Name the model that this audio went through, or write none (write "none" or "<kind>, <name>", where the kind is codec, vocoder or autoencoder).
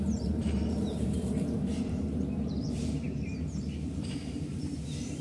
vocoder, BigVGAN v2